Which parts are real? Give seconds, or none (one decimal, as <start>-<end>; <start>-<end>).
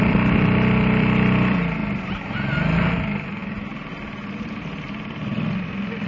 1.8-2.9; 3.4-4.3